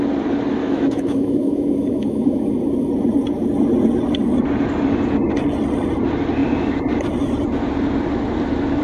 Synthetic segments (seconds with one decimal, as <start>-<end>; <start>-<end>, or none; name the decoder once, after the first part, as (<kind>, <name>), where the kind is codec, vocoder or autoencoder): 0.6-2.5 (autoencoder, DAC-VAE)